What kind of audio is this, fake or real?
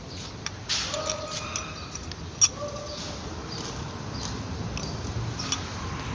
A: real